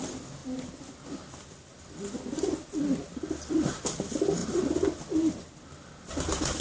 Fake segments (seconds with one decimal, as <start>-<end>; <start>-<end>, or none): none